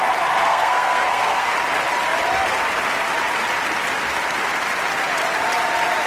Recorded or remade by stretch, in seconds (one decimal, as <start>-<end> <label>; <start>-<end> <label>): 0.0-0.5 recorded; 0.5-1.5 remade; 1.5-6.1 recorded